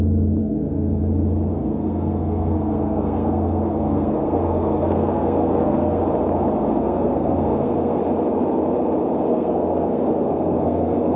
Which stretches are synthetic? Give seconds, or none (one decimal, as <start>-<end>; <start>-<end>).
0.4-1.0; 1.5-6.0; 6.7-8.0; 9.3-11.2

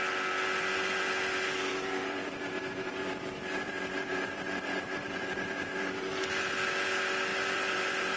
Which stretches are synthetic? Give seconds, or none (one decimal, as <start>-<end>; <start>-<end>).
1.7-5.9; 7.3-8.2